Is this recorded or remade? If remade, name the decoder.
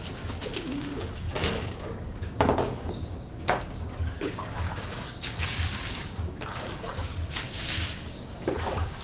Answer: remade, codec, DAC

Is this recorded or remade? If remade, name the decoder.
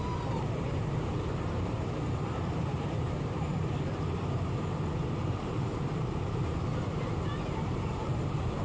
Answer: remade, vocoder, BigVGAN v2